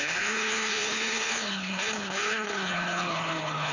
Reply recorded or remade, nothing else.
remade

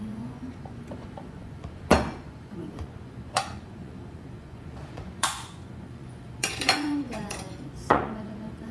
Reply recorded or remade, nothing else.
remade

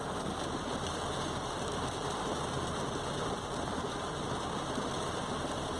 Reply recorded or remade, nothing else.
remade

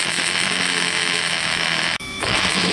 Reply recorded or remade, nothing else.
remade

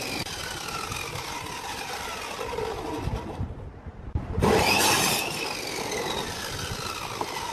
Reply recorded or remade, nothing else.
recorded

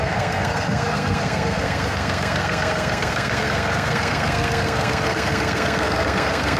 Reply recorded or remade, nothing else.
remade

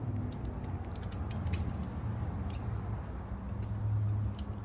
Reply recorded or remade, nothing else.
recorded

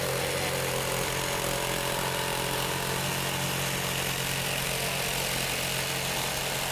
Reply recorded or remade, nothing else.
recorded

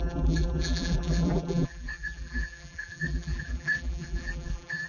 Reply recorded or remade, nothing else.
remade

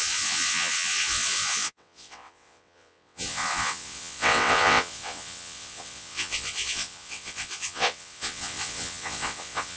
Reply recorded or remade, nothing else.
remade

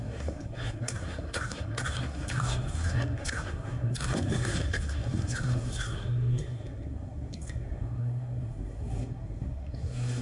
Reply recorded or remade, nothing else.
remade